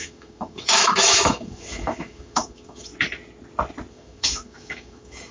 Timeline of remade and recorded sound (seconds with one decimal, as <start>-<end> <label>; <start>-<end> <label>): 0.0-2.9 remade; 2.9-3.9 recorded; 3.9-5.3 remade